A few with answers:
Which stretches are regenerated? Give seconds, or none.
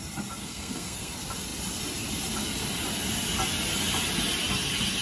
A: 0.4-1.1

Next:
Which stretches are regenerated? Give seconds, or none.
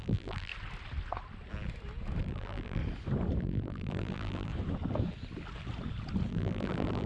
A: 0.0-0.5; 2.2-2.8; 3.4-4.5; 6.3-7.1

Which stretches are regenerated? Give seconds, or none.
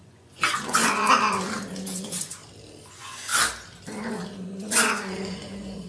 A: 0.0-0.8; 2.0-2.4; 2.9-3.3; 4.9-5.9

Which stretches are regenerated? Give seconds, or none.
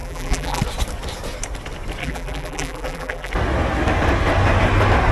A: 0.0-0.6; 2.0-3.3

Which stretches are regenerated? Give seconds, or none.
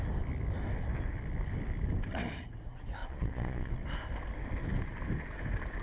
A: 3.0-3.7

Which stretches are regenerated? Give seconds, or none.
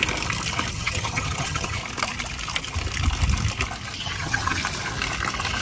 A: 0.7-1.8; 4.0-4.6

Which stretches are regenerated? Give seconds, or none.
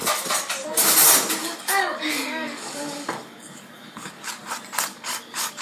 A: 1.4-4.3; 4.9-5.6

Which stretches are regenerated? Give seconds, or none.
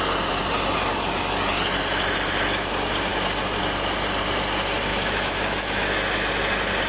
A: 4.9-5.9